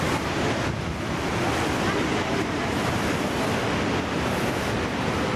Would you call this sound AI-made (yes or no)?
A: no